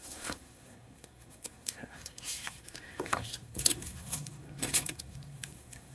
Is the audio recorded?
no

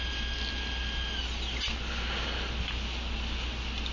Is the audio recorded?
yes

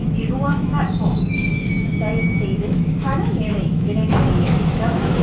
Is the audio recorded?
no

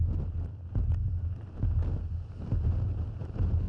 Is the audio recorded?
yes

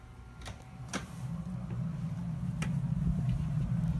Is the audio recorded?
yes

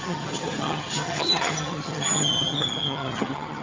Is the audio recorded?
no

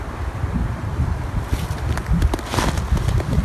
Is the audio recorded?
yes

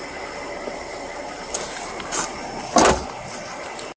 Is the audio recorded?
yes